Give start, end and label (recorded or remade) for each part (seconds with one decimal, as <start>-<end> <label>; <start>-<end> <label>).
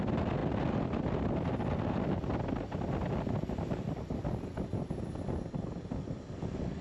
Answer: 0.0-6.8 recorded